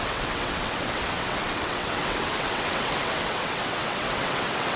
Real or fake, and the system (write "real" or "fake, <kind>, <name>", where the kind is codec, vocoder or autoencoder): fake, vocoder, WaveNeXt